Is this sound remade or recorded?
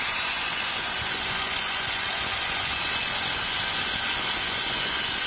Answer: remade